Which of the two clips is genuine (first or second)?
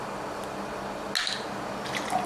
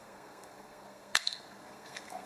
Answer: first